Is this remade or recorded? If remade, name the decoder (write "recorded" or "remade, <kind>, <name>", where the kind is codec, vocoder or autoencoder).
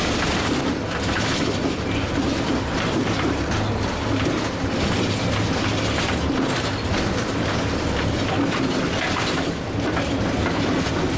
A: recorded